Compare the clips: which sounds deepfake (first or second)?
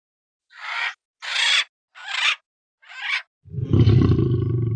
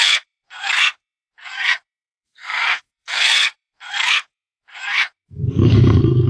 second